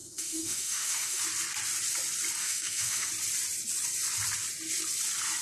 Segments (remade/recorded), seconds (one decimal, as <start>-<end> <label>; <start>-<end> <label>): 0.0-1.2 remade; 1.2-2.4 recorded; 2.4-3.1 remade; 3.1-5.4 recorded